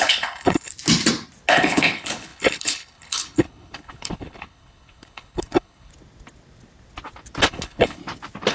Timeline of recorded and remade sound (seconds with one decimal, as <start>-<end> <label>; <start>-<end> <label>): 0.0-0.7 remade; 0.7-1.5 recorded; 1.5-5.9 remade; 5.9-7.5 recorded; 7.5-8.0 remade; 8.0-8.5 recorded